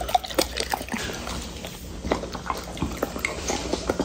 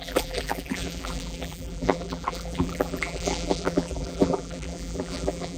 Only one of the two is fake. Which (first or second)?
second